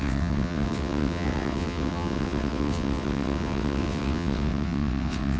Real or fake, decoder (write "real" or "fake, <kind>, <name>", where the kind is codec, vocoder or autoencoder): fake, vocoder, WaveNeXt